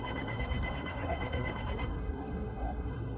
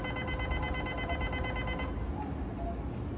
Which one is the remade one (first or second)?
first